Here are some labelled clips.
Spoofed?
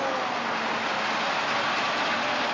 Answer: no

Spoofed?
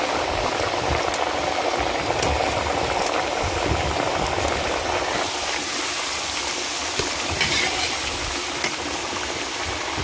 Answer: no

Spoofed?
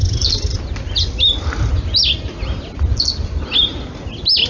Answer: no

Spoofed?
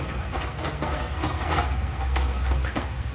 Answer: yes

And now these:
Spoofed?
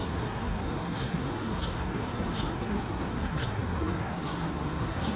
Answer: yes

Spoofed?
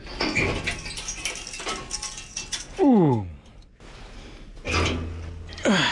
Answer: no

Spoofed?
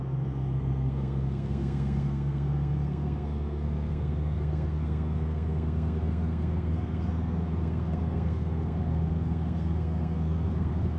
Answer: yes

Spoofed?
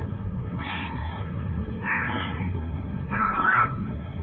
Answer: yes